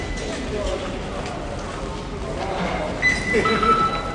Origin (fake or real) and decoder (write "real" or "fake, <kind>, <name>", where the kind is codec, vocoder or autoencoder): real